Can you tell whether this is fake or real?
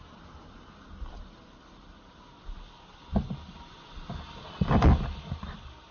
real